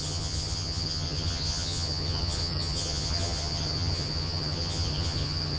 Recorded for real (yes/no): no